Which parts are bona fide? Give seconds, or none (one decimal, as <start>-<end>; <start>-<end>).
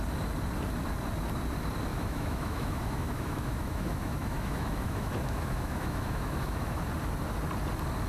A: 0.0-1.9; 6.8-8.1